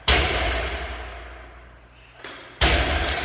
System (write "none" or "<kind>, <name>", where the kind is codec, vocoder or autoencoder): none